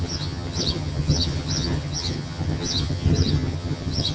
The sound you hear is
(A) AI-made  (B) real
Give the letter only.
A